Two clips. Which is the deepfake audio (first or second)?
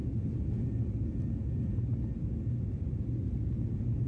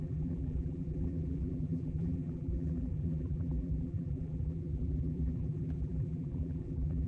second